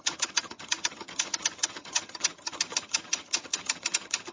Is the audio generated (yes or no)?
yes